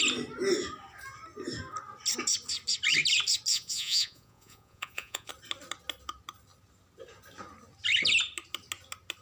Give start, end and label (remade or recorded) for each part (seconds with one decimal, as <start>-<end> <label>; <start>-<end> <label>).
0.0-3.5 recorded; 3.5-5.3 remade; 5.3-9.2 recorded